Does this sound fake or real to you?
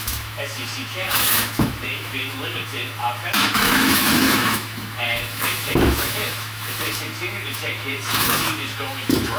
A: fake